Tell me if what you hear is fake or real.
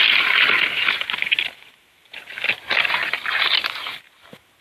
real